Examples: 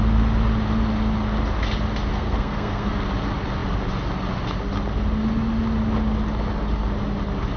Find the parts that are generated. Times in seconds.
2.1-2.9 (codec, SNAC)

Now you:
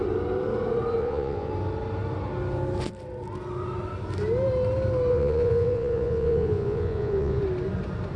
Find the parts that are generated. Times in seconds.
1.0-1.5 (vocoder, Vocos); 5.1-7.4

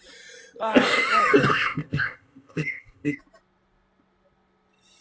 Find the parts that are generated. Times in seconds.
1.5-3.2 (codec, ZipCodec)

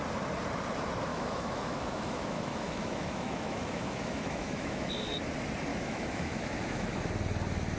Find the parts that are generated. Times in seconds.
1.1-4.9 (autoencoder, DAC-VAE); 5.7-7.0

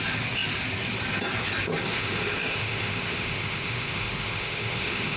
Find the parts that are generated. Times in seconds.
1.9-5.2 (autoencoder, DAC-VAE)

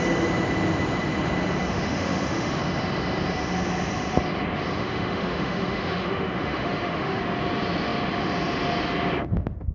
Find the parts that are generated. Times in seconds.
1.7-2.6 (autoencoder, DAC-VAE); 4.8-7.2

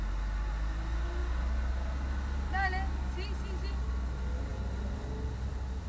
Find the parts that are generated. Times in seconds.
none